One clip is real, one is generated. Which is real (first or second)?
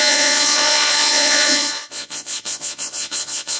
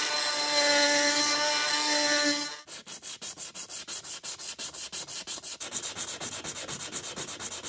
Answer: second